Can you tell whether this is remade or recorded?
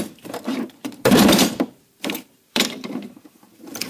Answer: remade